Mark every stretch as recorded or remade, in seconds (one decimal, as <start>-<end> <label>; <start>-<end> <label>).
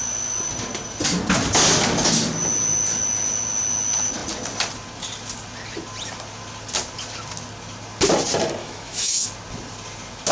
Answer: 0.0-8.6 recorded; 8.6-9.3 remade; 9.3-10.3 recorded